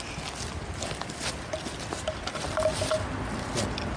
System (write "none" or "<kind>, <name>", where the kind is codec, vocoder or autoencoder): none